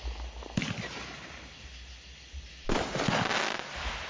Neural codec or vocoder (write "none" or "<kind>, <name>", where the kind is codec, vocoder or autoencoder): none